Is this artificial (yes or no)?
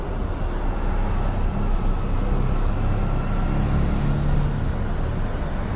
no